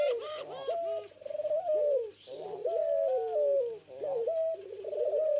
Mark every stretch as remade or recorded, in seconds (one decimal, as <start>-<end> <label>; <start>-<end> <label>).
0.0-2.6 remade; 2.6-5.0 recorded; 5.0-5.4 remade